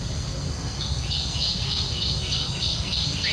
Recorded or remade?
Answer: remade